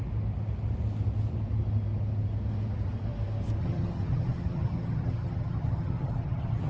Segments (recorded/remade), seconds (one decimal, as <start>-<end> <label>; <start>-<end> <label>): 0.0-3.6 recorded; 3.6-6.7 remade